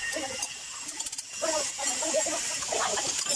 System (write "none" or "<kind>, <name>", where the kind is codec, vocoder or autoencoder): none